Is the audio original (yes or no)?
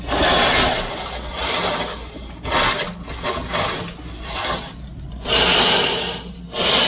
yes